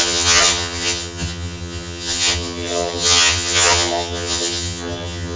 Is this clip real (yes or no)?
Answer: no